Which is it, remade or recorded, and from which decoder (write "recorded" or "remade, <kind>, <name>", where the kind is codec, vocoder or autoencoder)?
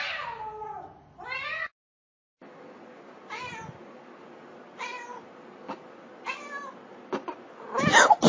recorded